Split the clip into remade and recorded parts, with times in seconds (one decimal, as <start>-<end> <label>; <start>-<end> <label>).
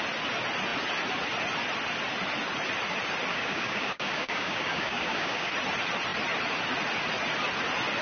0.0-3.3 recorded; 3.3-5.5 remade; 5.5-8.0 recorded